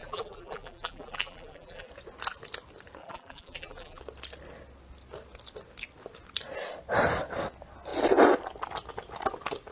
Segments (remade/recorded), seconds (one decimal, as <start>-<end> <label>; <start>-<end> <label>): 0.0-1.9 remade; 1.9-3.0 recorded; 3.0-4.0 remade; 4.0-9.7 recorded